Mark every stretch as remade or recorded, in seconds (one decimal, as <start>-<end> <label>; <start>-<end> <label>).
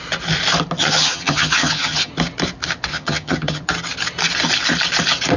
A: 0.0-0.8 recorded; 0.8-2.1 remade; 2.1-2.9 recorded; 2.9-3.6 remade; 3.6-5.4 recorded